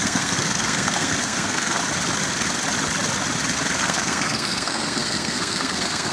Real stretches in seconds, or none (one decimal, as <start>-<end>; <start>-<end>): 1.8-3.8